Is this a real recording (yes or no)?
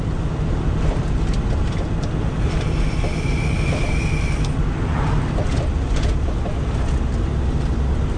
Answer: yes